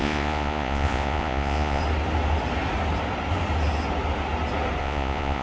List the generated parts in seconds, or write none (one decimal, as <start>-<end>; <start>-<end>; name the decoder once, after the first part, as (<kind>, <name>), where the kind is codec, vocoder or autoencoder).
0.0-1.8 (vocoder, Vocos); 4.8-5.4